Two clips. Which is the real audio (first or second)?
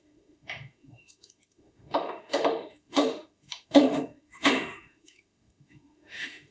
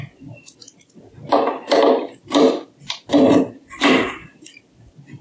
second